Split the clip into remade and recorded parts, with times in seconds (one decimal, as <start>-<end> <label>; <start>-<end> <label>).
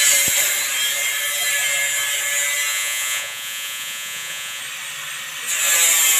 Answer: 0.0-2.7 recorded; 2.7-4.6 remade; 4.6-6.2 recorded